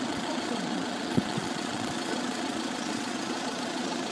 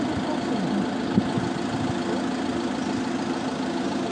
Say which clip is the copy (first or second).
first